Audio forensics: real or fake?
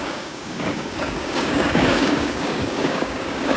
fake